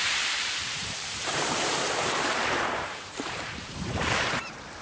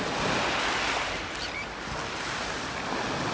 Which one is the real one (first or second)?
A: second